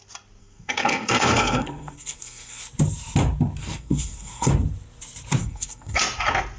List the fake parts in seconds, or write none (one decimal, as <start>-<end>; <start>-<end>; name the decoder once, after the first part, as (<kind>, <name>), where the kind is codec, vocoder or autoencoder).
0.4-2.6 (codec, SNAC); 3.6-4.5; 5.4-6.0